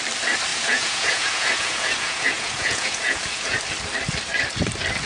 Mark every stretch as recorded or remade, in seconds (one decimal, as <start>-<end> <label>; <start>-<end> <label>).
0.0-0.5 recorded; 0.5-3.6 remade; 3.6-5.1 recorded